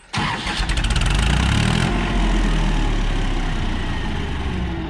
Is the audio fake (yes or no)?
no